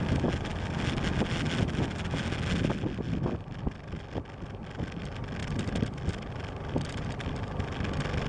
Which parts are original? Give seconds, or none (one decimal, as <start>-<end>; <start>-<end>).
0.0-8.3